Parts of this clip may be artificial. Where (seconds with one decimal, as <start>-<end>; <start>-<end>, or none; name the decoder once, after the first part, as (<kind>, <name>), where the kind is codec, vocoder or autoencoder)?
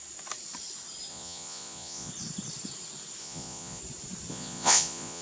1.1-2.1 (vocoder, Vocos); 3.2-3.8; 4.3-5.2